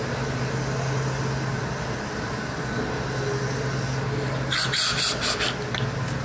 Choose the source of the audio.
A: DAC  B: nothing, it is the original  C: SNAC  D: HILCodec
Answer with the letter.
B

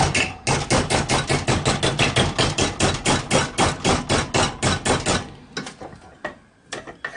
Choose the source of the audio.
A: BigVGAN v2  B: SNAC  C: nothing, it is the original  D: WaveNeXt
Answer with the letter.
C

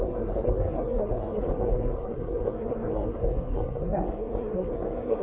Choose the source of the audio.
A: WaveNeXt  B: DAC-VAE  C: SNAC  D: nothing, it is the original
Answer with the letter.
C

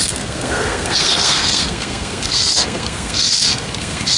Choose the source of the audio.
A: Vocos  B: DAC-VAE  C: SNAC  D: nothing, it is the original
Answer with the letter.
C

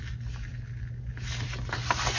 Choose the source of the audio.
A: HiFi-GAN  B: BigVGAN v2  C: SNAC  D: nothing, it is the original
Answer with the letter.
D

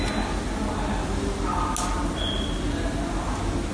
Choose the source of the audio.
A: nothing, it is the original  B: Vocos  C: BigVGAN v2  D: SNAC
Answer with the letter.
A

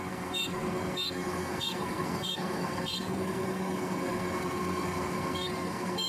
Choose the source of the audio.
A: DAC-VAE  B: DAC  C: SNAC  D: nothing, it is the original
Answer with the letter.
C